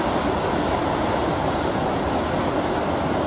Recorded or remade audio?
recorded